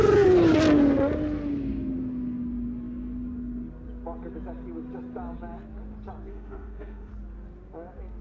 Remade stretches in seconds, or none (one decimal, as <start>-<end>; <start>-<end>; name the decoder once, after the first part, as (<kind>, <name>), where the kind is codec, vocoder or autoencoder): 6.3-7.1 (autoencoder, DAC-VAE)